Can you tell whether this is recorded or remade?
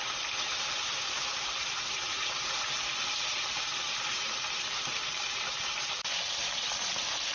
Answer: remade